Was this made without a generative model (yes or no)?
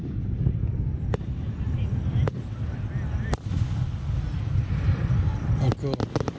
yes